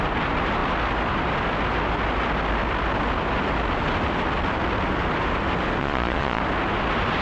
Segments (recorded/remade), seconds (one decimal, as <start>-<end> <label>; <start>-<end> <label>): 0.0-5.8 recorded; 5.8-6.4 remade; 6.4-7.2 recorded